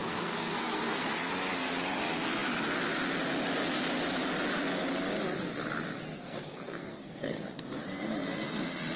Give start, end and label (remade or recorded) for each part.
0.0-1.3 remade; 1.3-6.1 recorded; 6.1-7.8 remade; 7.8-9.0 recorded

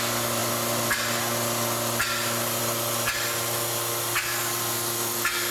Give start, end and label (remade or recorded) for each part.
0.0-5.5 recorded

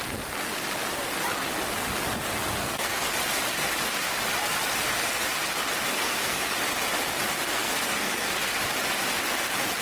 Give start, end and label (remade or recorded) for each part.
0.0-2.6 recorded; 2.6-3.1 remade; 3.1-5.9 recorded; 5.9-6.6 remade; 6.6-7.5 recorded; 7.5-8.5 remade; 8.5-9.8 recorded

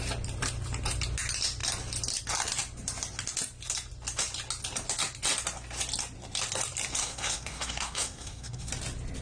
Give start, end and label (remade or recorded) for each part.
0.0-7.0 recorded; 7.0-8.7 remade; 8.7-9.2 recorded

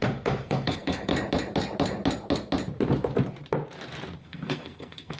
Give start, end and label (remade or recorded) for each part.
0.0-1.1 remade; 1.1-4.2 recorded; 4.2-5.2 remade